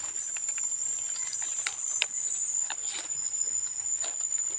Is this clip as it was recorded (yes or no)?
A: yes